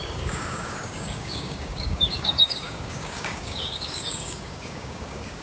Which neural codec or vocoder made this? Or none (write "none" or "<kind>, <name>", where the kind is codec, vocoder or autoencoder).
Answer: codec, DAC